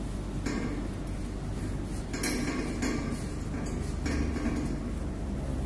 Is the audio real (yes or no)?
yes